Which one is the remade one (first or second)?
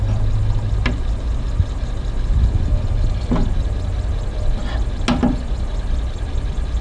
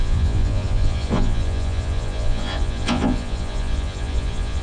second